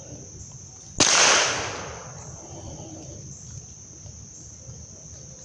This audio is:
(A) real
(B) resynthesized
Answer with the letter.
A